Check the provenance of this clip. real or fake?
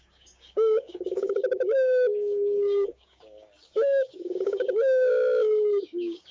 fake